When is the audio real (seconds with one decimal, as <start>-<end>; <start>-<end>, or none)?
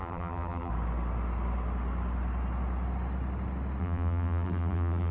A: 0.7-3.8